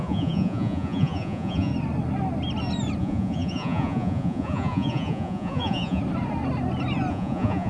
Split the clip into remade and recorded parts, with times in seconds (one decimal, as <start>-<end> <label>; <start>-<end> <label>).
0.0-1.7 remade; 1.7-3.0 recorded; 3.0-6.0 remade; 6.0-7.1 recorded; 7.1-7.7 remade

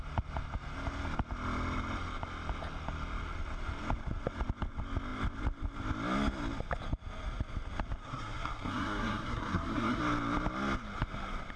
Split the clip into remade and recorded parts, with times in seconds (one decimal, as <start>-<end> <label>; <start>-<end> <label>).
0.0-8.0 recorded; 8.0-10.0 remade; 10.0-11.6 recorded